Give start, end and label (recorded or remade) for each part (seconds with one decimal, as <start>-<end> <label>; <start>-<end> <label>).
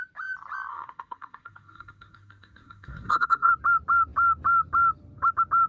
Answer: 0.0-0.7 recorded; 0.7-3.5 remade; 3.5-5.7 recorded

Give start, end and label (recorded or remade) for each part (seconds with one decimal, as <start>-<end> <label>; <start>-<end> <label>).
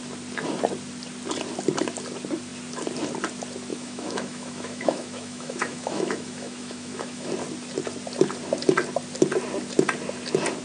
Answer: 0.0-3.7 recorded; 3.7-7.3 remade; 7.3-10.6 recorded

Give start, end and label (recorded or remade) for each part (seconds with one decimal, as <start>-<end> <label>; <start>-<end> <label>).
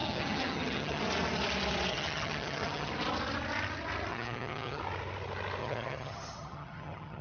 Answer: 0.0-1.0 remade; 1.0-1.9 recorded; 1.9-2.9 remade; 2.9-4.1 recorded; 4.1-4.8 remade; 4.8-5.6 recorded; 5.6-7.2 remade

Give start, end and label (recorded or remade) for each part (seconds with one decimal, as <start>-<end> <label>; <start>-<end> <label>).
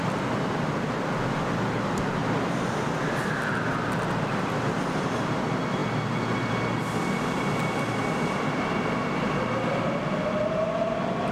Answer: 0.0-11.3 recorded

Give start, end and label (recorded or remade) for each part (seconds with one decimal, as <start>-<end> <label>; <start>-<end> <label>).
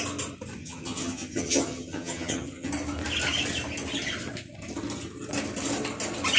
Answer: 0.0-0.6 recorded; 0.6-2.7 remade; 2.7-6.4 recorded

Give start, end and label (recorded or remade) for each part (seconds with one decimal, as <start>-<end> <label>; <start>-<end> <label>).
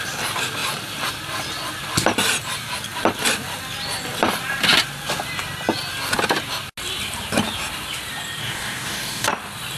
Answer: 0.0-8.4 recorded; 8.4-9.3 remade; 9.3-9.8 recorded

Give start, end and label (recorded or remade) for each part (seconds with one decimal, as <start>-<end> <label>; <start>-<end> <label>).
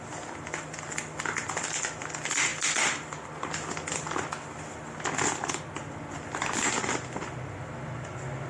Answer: 0.0-8.5 recorded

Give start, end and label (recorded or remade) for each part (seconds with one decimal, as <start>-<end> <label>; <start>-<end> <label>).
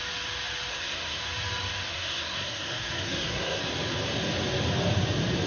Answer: 0.0-0.7 recorded; 0.7-1.2 remade; 1.2-1.9 recorded; 1.9-3.6 remade; 3.6-5.5 recorded